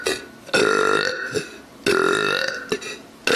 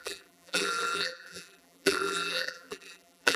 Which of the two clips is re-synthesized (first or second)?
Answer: second